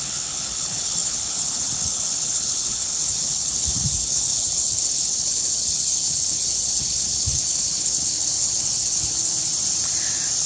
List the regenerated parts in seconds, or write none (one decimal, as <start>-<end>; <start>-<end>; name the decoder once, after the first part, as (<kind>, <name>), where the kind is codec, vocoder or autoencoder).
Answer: 0.0-9.5 (codec, HILCodec)